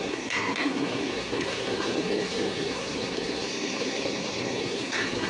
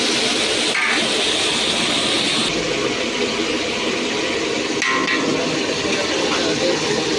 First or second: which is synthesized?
first